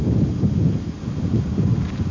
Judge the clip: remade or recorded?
recorded